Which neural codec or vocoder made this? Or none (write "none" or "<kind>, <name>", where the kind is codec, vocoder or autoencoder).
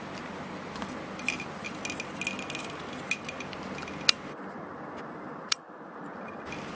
none